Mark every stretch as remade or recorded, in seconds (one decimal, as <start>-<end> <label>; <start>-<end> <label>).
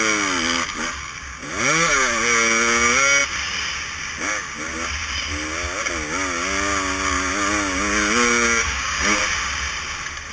0.0-8.6 recorded; 8.6-9.2 remade; 9.2-10.3 recorded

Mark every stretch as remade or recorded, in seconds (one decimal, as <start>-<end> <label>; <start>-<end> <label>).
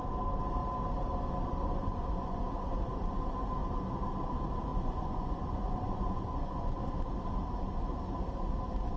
0.0-1.8 recorded; 1.8-2.4 remade; 2.4-4.7 recorded; 4.7-6.8 remade; 6.8-9.0 recorded